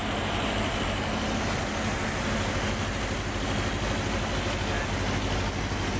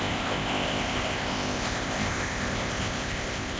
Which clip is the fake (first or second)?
second